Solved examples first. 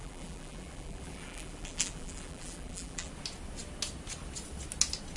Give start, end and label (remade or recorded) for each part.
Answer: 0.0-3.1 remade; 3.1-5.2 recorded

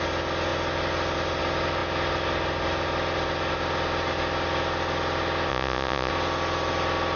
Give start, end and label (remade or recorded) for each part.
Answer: 0.0-5.5 recorded; 5.5-6.1 remade; 6.1-7.2 recorded

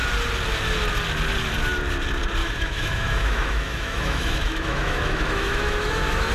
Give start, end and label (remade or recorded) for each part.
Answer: 0.0-2.4 recorded; 2.4-6.3 remade

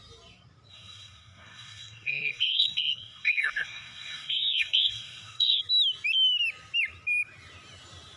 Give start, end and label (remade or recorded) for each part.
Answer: 0.0-0.7 recorded; 0.7-5.6 remade; 5.6-8.2 recorded

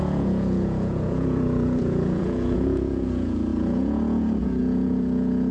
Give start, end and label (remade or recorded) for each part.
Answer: 0.0-5.5 remade

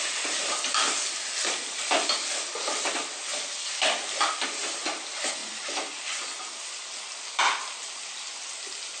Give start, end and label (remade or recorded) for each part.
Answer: 0.0-9.0 recorded

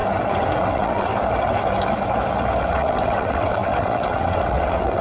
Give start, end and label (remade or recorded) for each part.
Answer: 0.0-0.6 recorded; 0.6-1.1 remade; 1.1-2.6 recorded; 2.6-5.0 remade

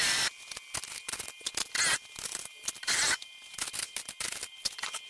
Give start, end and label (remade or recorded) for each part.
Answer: 0.0-5.1 recorded